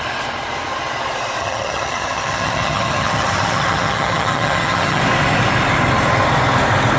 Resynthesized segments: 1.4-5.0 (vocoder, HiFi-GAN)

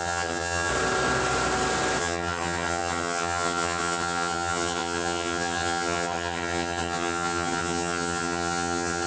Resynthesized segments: 0.0-0.7 (vocoder, HiFi-GAN); 2.0-9.1

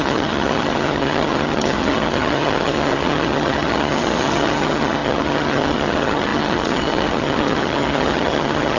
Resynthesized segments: 0.0-8.8 (vocoder, HiFi-GAN)

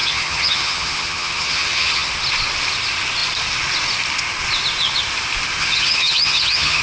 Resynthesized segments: 0.0-2.1 (vocoder, HiFi-GAN); 5.6-6.8

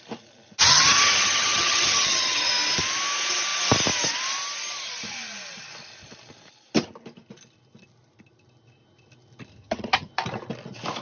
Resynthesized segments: 0.7-2.5 (vocoder, HiFi-GAN); 9.5-10.1

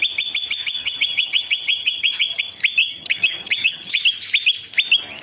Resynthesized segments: 0.8-2.4 (vocoder, HiFi-GAN); 2.8-4.0